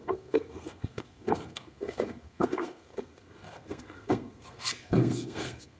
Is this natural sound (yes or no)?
no